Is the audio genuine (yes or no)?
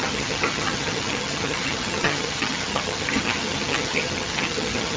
no